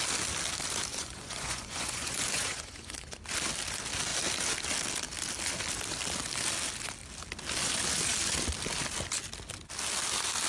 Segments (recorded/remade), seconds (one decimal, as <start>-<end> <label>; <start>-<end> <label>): 0.0-0.9 recorded; 0.9-3.2 remade; 3.2-10.5 recorded